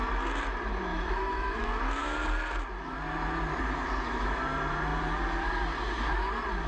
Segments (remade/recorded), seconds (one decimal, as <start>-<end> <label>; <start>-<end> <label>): 0.0-0.9 recorded; 0.9-1.8 remade; 1.8-6.7 recorded